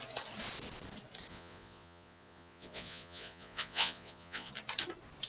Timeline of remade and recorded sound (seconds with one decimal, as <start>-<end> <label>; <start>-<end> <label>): 0.0-1.3 recorded; 1.3-4.5 remade; 4.5-5.3 recorded